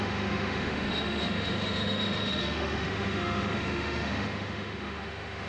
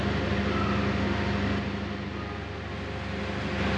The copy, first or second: first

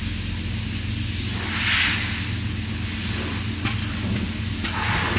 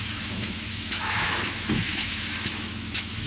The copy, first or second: second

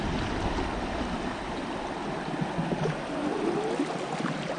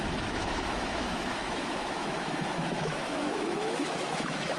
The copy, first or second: second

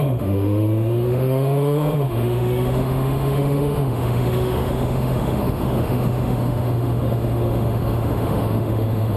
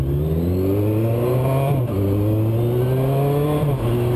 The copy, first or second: first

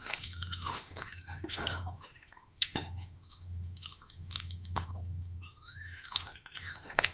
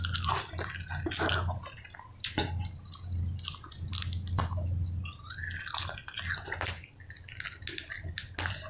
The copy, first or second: first